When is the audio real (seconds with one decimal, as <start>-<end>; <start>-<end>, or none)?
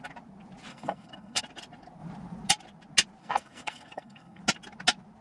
0.0-0.7; 1.4-3.2; 4.4-5.2